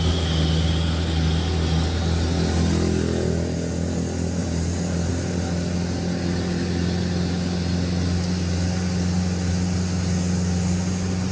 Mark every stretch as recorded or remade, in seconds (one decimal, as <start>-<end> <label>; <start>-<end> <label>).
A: 0.0-4.4 recorded; 4.4-5.1 remade; 5.1-11.3 recorded